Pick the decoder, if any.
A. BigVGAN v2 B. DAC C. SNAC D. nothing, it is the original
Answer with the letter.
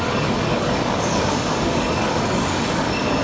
B